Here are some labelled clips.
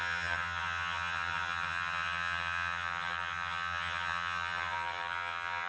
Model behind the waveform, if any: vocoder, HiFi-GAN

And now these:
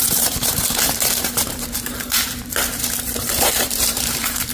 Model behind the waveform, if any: vocoder, BigVGAN v2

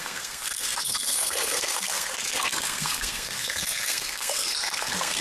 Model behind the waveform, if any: codec, SNAC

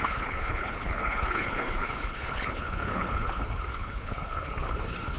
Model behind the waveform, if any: codec, HILCodec